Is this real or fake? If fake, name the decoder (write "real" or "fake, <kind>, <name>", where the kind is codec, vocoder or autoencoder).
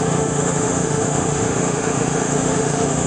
fake, autoencoder, DAC-VAE